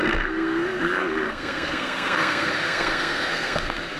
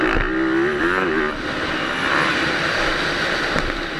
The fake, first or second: first